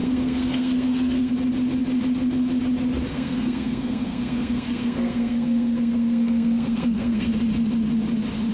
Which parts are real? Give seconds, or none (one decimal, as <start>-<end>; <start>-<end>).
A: 1.3-3.1; 7.3-8.5